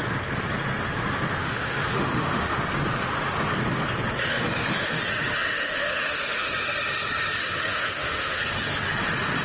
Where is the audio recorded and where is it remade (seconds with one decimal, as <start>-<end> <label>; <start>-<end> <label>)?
0.0-1.4 recorded; 1.4-2.6 remade; 2.6-4.3 recorded; 4.3-5.0 remade; 5.0-5.4 recorded; 5.4-6.5 remade; 6.5-7.4 recorded; 7.4-8.4 remade; 8.4-9.4 recorded